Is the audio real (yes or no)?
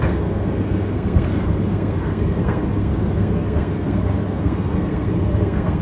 no